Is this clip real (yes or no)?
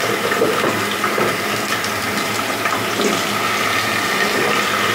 yes